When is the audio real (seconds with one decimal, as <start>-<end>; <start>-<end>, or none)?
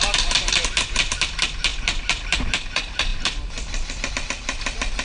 0.0-5.0